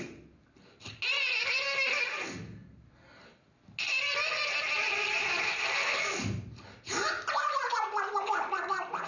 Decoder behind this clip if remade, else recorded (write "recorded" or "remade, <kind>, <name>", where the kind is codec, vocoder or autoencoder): recorded